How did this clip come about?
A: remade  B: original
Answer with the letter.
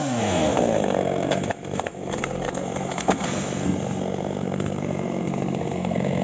A